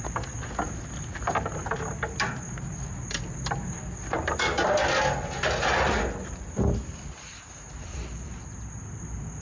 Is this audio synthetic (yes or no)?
no